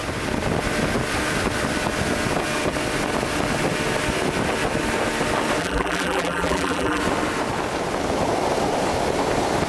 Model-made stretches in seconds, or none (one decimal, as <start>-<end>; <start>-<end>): 5.6-7.0